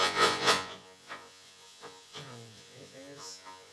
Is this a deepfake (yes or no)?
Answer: yes